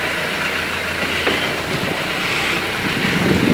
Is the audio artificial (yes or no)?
no